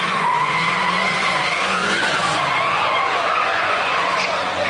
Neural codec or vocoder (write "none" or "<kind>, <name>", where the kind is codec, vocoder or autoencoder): vocoder, Vocos